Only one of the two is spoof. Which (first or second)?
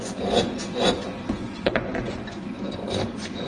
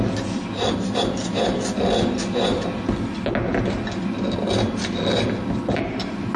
first